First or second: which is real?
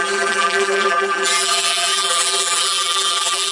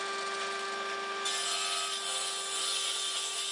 second